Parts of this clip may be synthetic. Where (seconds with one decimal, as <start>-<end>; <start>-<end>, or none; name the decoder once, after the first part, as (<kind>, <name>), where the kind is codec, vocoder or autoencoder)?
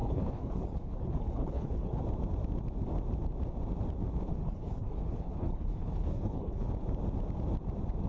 0.0-2.0 (codec, HILCodec); 4.3-6.7